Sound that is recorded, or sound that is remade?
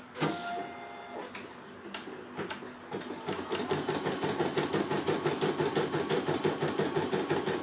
recorded